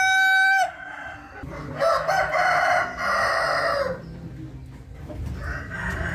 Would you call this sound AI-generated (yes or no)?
no